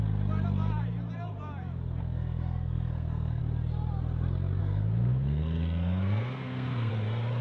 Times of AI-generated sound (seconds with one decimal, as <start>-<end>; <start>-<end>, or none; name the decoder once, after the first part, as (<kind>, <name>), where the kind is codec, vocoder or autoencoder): 2.0-3.4 (codec, SNAC); 4.6-6.9